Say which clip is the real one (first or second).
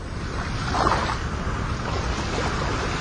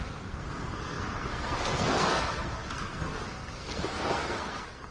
first